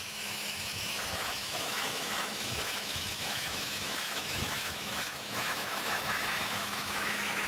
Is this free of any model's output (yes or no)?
no